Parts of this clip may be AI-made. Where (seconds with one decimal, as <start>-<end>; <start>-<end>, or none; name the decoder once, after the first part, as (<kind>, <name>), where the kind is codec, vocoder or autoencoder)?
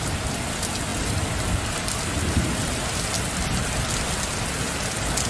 none